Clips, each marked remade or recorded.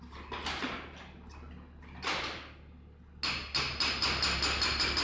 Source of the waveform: recorded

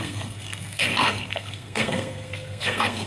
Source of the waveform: remade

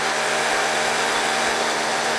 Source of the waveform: recorded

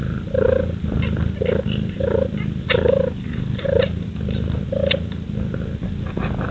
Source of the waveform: recorded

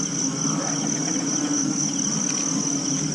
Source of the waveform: recorded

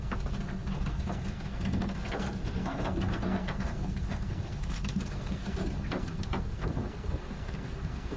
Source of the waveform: remade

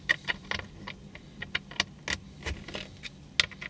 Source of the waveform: recorded